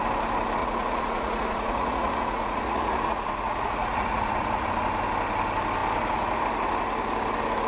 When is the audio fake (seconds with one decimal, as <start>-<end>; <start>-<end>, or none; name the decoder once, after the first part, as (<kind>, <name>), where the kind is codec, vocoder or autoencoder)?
0.6-4.7 (vocoder, Vocos)